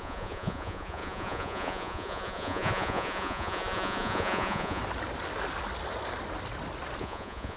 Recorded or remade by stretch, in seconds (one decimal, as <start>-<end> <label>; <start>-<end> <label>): 0.0-4.8 remade; 4.8-7.0 recorded; 7.0-7.6 remade